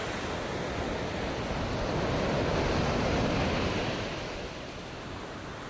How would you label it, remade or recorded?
recorded